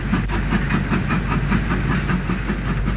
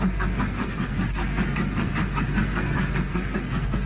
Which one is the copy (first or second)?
second